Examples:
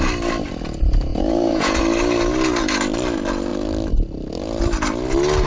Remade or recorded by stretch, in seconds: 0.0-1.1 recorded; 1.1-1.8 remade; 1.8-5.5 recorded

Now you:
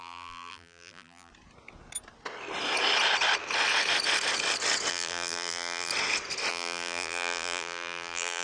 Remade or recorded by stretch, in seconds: 0.0-1.3 remade; 1.3-4.9 recorded; 4.9-5.9 remade; 5.9-6.5 recorded; 6.5-8.4 remade

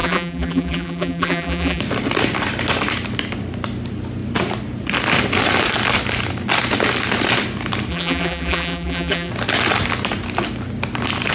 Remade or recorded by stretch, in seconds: 0.0-1.8 remade; 1.8-7.9 recorded; 7.9-9.3 remade; 9.3-11.3 recorded

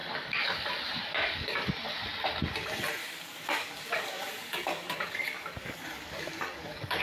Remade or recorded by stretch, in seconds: 0.0-0.7 remade; 0.7-1.1 recorded; 1.1-1.7 remade; 1.7-3.0 recorded; 3.0-7.0 remade

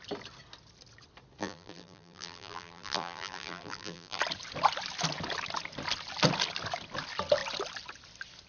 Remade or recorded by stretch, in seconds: 0.0-1.4 recorded; 1.4-4.2 remade; 4.2-8.5 recorded